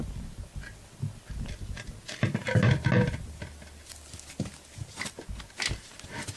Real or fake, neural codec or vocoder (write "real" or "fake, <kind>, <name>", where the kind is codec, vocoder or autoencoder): real